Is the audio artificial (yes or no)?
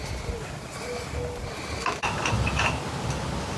no